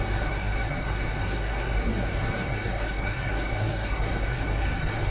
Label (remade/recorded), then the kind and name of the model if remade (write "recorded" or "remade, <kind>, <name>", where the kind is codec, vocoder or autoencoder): remade, codec, SNAC